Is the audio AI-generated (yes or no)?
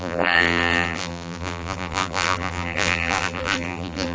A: yes